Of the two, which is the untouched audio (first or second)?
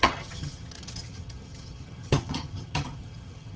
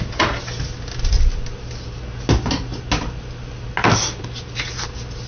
second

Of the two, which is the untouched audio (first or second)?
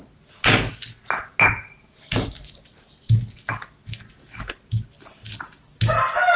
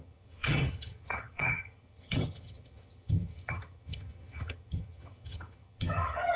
first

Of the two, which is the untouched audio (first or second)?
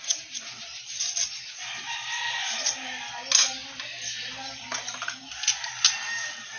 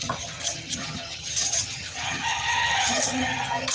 first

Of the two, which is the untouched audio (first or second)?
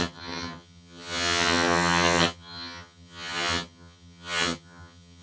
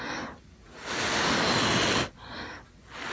second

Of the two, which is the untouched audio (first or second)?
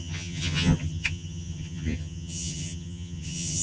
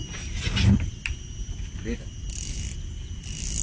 second